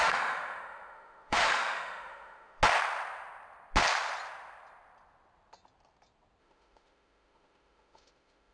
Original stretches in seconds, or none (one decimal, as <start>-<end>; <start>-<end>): 2.6-6.4

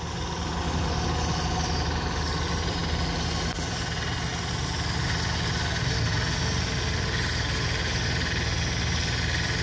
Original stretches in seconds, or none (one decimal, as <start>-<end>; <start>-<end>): 0.0-9.6

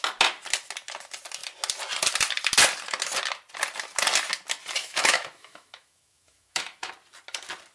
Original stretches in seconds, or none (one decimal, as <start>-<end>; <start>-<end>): 0.0-4.8; 6.9-7.7

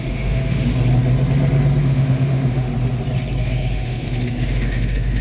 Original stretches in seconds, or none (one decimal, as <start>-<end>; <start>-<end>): 0.7-1.8; 2.7-3.4

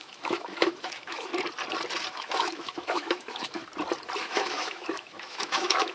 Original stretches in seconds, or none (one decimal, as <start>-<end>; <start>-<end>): 1.3-2.1; 3.6-4.2

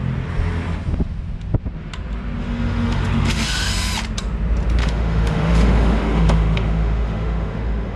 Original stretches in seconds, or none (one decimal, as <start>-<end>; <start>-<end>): 0.0-2.4; 3.7-4.8